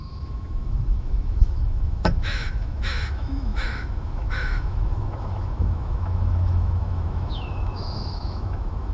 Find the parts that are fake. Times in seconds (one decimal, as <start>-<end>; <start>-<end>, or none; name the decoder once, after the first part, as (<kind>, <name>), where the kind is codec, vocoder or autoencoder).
0.0-8.9 (autoencoder, DAC-VAE)